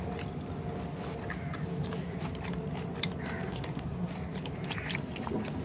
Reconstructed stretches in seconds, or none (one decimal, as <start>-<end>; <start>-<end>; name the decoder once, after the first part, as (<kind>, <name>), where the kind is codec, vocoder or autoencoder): 3.5-4.1 (codec, SNAC)